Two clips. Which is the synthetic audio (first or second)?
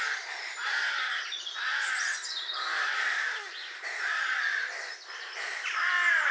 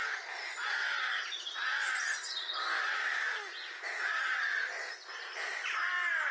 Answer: first